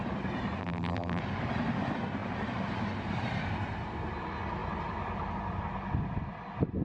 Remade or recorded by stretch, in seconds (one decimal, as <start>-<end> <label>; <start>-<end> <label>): 0.0-0.6 recorded; 0.6-1.2 remade; 1.2-6.8 recorded